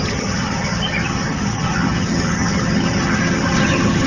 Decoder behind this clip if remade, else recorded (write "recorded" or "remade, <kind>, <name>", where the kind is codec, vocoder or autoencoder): remade, vocoder, HiFi-GAN